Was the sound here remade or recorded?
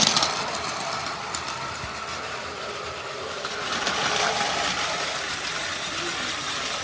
recorded